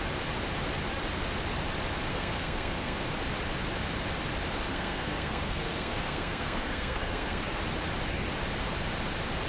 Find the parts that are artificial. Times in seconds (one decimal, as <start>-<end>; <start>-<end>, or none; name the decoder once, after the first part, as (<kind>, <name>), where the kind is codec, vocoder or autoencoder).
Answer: 2.1-3.1 (codec, SNAC); 4.7-7.6